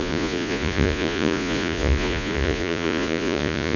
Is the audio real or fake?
fake